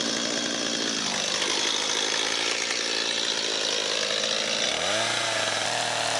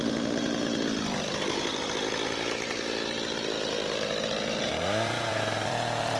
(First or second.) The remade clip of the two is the second